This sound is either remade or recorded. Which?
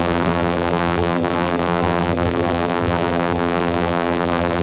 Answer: remade